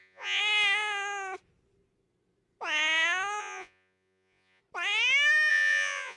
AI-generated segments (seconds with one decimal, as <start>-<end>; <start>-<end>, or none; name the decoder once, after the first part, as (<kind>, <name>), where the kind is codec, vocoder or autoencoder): 0.0-0.4 (vocoder, Vocos); 3.4-4.6; 5.5-6.2

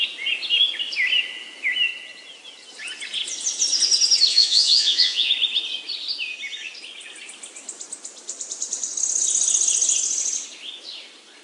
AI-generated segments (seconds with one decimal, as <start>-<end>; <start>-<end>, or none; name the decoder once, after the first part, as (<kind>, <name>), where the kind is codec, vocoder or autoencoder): 4.3-5.3 (vocoder, Vocos)

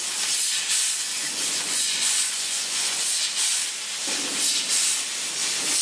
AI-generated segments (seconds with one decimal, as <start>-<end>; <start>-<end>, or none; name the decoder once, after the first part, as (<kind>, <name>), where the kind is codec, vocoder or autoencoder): 1.2-3.0 (vocoder, Vocos)

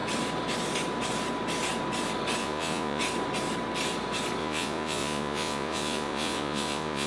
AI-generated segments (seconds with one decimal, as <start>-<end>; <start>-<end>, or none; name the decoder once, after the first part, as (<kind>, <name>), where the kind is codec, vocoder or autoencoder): 2.4-3.0 (vocoder, Vocos); 4.4-7.1